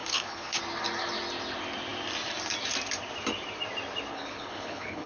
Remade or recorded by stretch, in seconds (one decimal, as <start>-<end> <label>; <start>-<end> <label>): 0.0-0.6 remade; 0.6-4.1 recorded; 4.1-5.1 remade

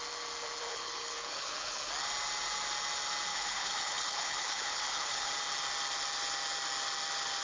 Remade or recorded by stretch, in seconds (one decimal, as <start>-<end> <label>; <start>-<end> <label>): 0.0-0.7 recorded; 0.7-1.9 remade; 1.9-3.3 recorded; 3.3-5.3 remade; 5.3-7.4 recorded

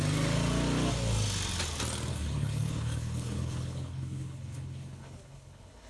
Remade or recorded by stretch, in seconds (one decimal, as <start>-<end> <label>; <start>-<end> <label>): 0.0-2.1 recorded; 2.1-5.9 remade